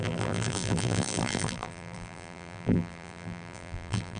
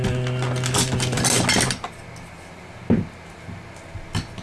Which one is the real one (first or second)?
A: second